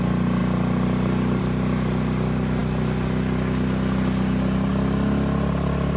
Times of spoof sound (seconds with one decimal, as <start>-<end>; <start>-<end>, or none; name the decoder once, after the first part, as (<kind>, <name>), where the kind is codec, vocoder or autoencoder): none